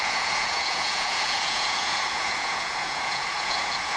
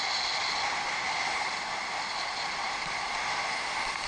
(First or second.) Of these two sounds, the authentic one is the second